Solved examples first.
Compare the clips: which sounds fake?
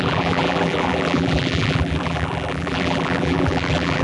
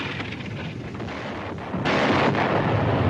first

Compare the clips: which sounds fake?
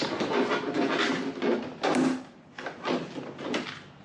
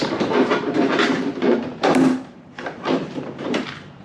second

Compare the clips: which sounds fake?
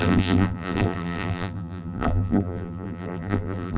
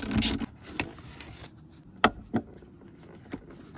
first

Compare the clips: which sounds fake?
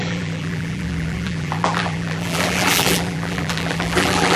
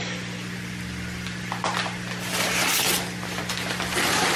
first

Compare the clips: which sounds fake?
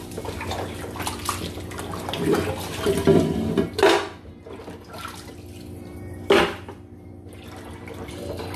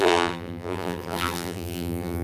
second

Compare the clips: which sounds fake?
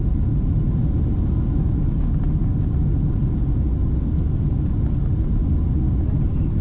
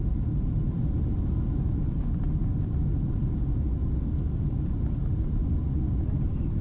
second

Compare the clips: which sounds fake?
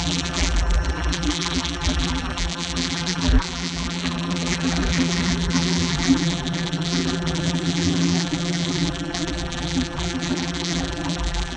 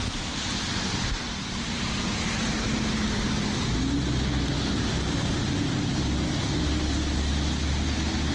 first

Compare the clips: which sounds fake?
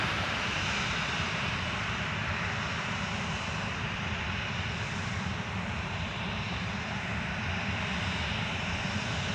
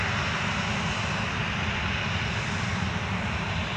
first